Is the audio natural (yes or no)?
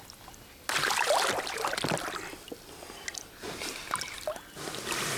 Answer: yes